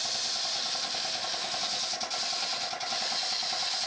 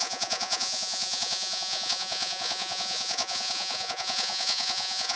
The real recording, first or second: first